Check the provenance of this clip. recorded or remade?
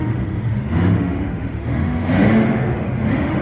remade